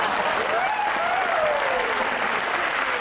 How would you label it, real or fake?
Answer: real